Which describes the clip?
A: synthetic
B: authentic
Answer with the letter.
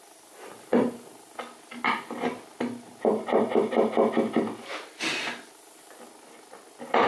B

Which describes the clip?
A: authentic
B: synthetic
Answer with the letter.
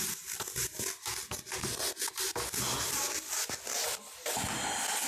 A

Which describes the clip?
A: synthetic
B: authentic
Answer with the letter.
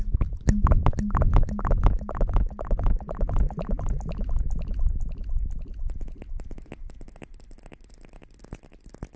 B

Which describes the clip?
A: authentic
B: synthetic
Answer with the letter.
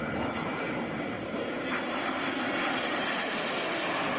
B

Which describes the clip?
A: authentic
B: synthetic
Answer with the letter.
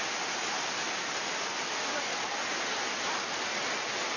A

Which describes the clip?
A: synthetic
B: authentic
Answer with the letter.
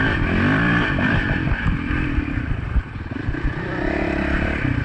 A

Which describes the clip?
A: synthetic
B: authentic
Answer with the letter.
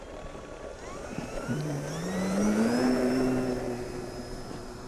A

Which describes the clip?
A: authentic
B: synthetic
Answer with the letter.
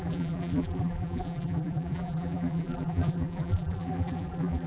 B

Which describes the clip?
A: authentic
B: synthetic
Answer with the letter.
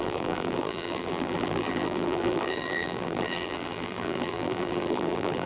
B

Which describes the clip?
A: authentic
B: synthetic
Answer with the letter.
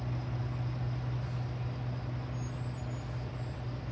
A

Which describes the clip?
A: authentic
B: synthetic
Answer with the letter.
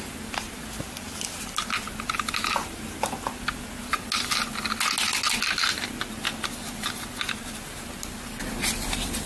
A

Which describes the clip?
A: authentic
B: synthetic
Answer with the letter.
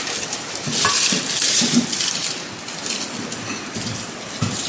A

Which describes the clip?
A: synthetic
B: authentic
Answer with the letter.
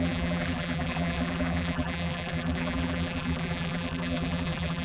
A